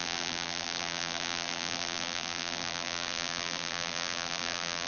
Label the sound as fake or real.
fake